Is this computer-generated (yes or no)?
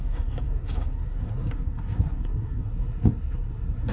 yes